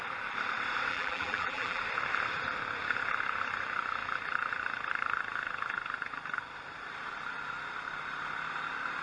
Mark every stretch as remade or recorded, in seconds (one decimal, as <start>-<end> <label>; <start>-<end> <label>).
0.0-0.9 recorded; 0.9-1.8 remade; 1.8-9.0 recorded